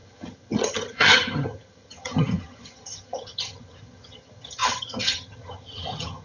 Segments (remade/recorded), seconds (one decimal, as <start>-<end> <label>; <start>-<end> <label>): 0.0-6.2 remade